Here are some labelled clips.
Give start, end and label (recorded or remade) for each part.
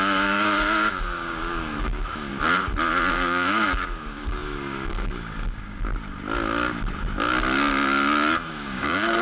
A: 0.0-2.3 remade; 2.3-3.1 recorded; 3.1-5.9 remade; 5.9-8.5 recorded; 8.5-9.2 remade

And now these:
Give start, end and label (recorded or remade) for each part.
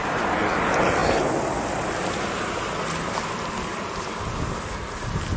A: 0.0-5.4 recorded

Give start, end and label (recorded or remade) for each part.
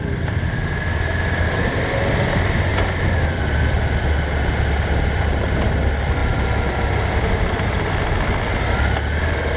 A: 0.0-9.6 recorded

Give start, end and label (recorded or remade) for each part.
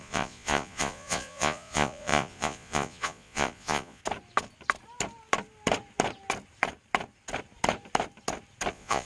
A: 0.0-4.0 remade; 4.0-8.7 recorded; 8.7-9.1 remade